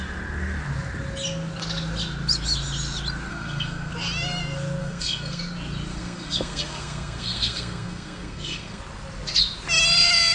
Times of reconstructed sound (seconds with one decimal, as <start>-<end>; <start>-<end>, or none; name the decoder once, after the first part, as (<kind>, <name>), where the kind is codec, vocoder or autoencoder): 3.3-3.9 (codec, SNAC); 4.8-5.4; 5.9-8.8